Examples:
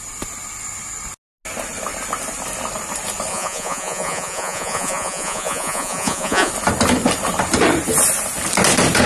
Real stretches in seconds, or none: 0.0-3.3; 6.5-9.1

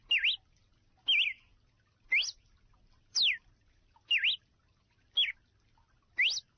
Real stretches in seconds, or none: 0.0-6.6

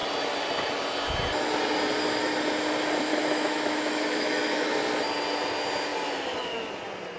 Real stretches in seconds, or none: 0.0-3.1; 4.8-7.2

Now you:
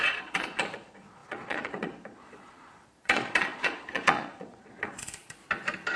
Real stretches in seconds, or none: 5.4-6.0

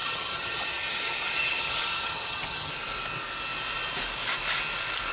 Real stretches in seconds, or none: 2.7-5.1

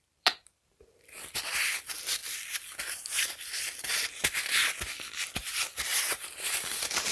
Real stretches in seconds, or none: none

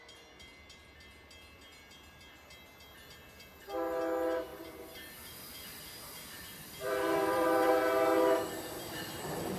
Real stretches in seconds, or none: 0.0-4.5; 7.7-9.6